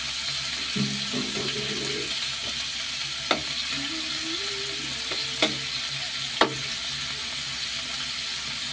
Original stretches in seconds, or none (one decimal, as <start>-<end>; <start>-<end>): 0.0-8.7